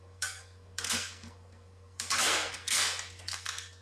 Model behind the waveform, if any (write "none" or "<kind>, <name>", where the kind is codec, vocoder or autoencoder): codec, SNAC